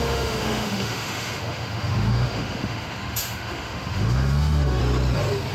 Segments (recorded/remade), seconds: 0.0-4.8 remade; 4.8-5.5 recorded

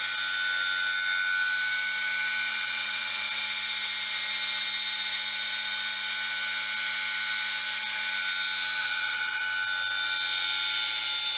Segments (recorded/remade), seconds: 0.0-2.5 recorded; 2.5-3.2 remade; 3.2-8.8 recorded; 8.8-9.4 remade; 9.4-11.4 recorded

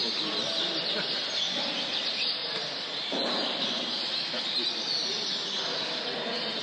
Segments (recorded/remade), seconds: 0.0-0.7 remade; 0.7-2.4 recorded; 2.4-4.4 remade; 4.4-6.6 recorded

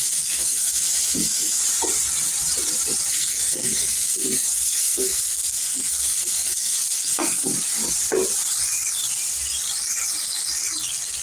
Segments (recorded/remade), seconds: 0.0-1.6 remade; 1.6-3.1 recorded; 3.1-7.5 remade; 7.5-11.2 recorded

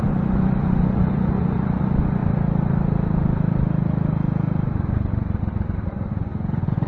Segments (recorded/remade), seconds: 0.0-2.2 remade; 2.2-6.1 recorded; 6.1-6.9 remade

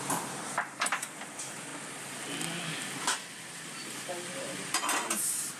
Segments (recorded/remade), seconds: 0.0-1.7 remade; 1.7-3.5 recorded; 3.5-5.6 remade